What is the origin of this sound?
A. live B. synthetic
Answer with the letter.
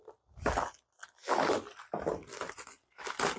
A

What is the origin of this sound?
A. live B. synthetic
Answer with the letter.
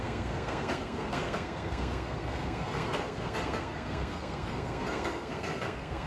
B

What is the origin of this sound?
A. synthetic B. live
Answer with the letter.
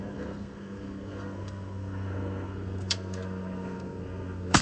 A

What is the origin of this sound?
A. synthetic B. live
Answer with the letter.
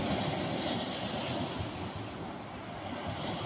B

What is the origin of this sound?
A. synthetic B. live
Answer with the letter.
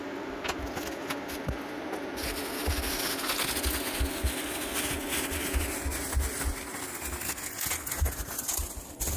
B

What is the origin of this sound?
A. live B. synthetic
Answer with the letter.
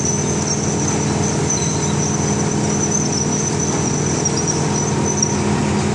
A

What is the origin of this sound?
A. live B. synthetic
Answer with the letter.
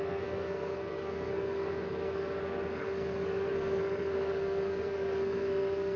B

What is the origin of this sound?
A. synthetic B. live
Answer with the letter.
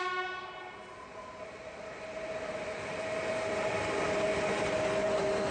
B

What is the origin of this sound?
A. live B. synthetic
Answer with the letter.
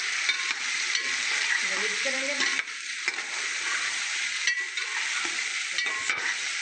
B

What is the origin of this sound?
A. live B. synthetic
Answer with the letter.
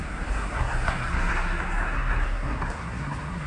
B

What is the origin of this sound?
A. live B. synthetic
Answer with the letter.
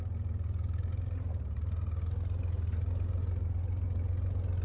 A